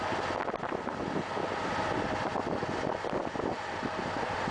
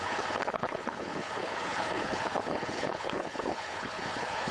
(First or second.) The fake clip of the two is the second